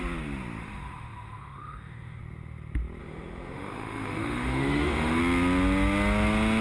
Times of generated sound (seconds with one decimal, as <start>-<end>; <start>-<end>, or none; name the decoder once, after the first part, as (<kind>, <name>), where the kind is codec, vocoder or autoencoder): 0.6-2.2 (autoencoder, DAC-VAE); 3.0-5.2